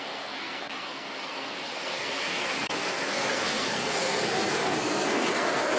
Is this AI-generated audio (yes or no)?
yes